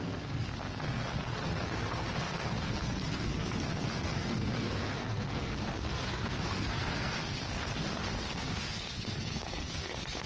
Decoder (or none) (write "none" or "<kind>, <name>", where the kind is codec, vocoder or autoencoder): codec, SNAC